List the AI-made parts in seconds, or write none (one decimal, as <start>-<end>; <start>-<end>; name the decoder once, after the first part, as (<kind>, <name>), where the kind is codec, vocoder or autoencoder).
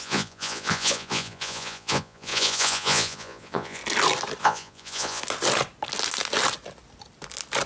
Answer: 0.0-3.8 (vocoder, Vocos); 4.4-5.2